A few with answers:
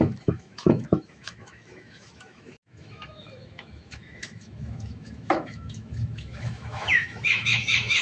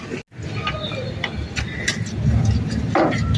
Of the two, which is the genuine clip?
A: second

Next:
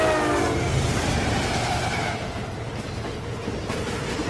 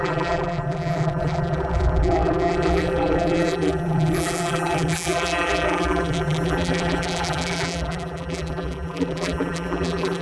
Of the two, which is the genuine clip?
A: first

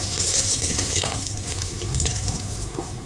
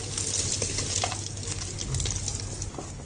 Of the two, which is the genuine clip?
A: second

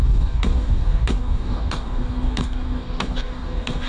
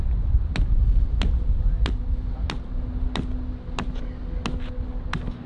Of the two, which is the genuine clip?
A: second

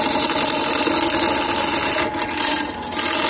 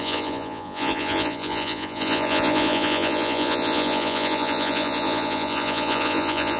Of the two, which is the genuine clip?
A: first